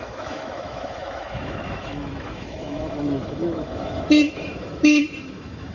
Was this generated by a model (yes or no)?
yes